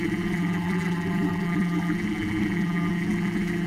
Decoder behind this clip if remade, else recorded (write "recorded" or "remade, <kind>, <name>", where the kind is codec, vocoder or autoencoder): remade, vocoder, BigVGAN v2